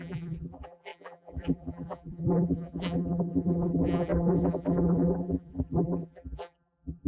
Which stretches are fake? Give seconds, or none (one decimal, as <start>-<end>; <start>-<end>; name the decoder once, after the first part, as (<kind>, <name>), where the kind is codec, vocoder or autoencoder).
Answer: 0.0-7.1 (vocoder, BigVGAN v2)